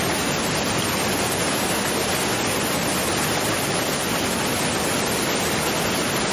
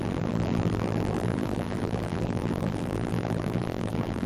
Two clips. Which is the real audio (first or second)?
first